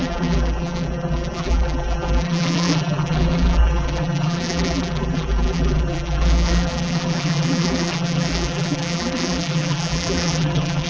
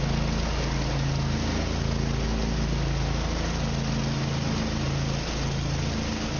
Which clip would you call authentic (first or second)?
second